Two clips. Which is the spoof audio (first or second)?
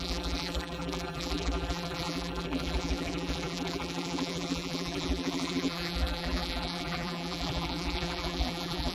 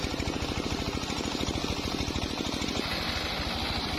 first